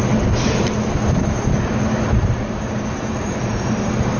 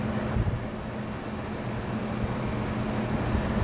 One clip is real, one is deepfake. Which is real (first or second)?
second